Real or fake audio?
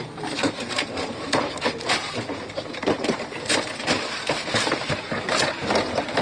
fake